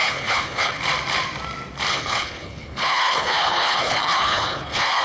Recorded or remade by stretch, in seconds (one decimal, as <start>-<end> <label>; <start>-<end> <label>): 0.0-0.8 remade; 0.8-1.9 recorded; 1.9-5.0 remade